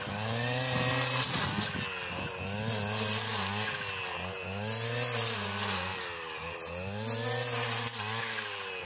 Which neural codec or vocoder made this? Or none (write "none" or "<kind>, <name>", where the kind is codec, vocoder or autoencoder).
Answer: none